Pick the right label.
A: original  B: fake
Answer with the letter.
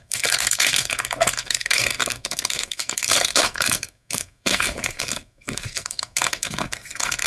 B